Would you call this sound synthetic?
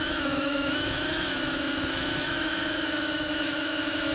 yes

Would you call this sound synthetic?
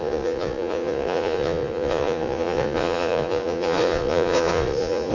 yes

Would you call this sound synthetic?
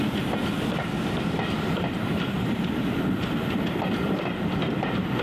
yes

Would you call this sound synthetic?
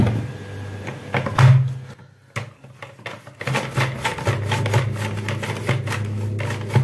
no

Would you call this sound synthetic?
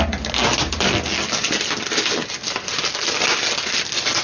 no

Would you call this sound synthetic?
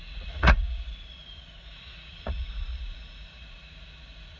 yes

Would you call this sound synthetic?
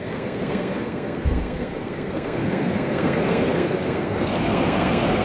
yes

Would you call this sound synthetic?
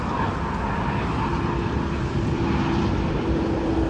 no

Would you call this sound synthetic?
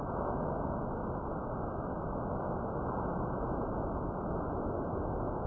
no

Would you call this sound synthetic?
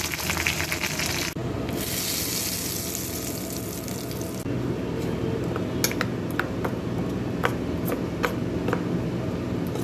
no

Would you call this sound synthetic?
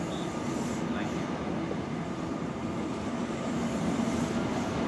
no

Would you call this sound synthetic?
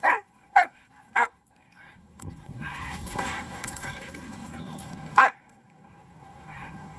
yes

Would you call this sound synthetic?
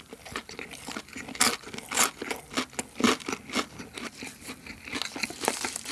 no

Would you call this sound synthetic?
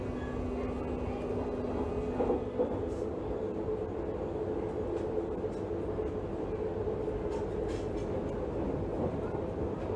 no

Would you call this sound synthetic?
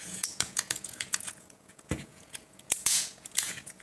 yes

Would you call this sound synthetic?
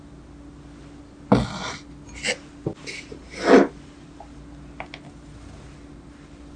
no